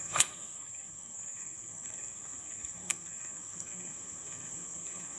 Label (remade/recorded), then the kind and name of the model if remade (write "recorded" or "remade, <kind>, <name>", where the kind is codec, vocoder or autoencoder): remade, codec, SNAC